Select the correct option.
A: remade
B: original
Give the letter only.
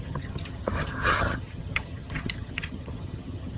A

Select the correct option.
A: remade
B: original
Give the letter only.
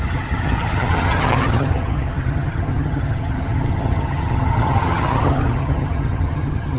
A